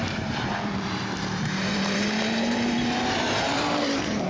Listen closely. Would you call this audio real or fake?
fake